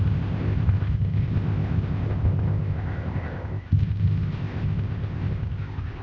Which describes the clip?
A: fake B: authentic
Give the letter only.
A